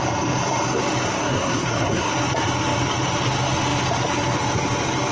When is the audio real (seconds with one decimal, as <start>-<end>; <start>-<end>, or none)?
0.0-1.1; 2.1-5.1